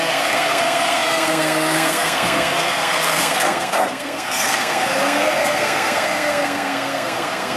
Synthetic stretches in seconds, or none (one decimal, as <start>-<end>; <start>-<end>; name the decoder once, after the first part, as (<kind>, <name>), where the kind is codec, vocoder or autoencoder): 0.0-7.6 (codec, SNAC)